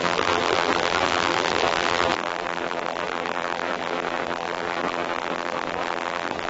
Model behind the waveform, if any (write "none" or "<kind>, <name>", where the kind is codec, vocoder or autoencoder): vocoder, BigVGAN v2